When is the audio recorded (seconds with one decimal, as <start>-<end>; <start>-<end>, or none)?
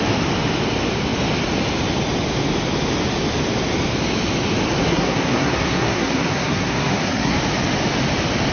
0.0-4.8; 7.4-8.5